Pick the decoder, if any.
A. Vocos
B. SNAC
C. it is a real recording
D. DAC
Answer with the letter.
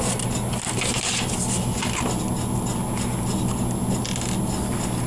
C